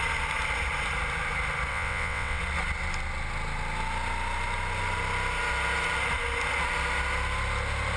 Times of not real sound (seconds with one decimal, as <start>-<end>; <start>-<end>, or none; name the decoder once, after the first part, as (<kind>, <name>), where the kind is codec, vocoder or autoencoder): 1.7-2.4 (vocoder, WaveNeXt)